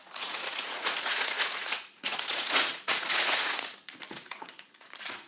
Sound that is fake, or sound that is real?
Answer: fake